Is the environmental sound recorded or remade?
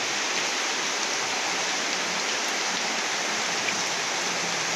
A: recorded